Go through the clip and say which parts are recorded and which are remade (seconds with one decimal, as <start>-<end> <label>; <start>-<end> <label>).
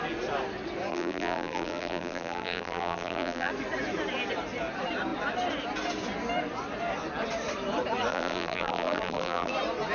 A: 0.0-0.9 recorded; 0.9-3.5 remade; 3.5-8.1 recorded; 8.1-9.5 remade; 9.5-9.9 recorded